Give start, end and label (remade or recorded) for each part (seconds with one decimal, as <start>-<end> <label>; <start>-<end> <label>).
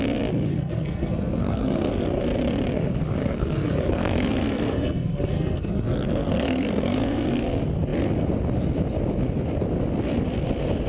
0.0-0.5 recorded; 0.5-1.9 remade; 1.9-3.2 recorded; 3.2-7.4 remade; 7.4-10.9 recorded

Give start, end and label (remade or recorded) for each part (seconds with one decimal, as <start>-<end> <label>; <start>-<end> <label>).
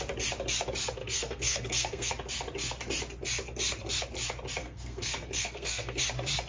0.0-1.0 recorded; 1.0-2.1 remade; 2.1-4.6 recorded; 4.6-6.0 remade; 6.0-6.5 recorded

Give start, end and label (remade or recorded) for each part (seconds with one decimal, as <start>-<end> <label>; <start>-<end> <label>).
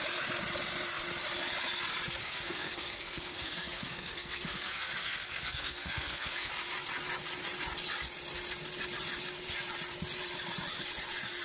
0.0-2.2 recorded; 2.2-6.5 remade; 6.5-11.4 recorded